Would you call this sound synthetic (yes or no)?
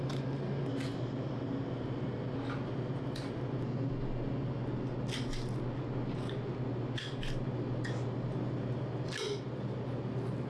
no